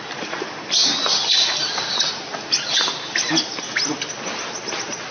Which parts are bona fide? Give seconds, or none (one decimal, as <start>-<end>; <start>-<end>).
0.0-5.1